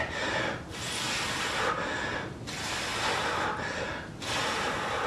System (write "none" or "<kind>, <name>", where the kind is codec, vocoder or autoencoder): none